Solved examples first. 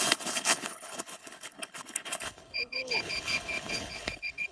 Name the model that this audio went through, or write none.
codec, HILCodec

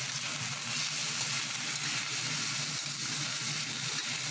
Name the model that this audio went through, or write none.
none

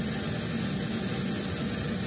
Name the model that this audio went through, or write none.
none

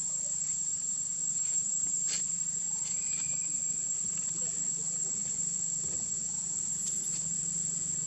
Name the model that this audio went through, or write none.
vocoder, BigVGAN v2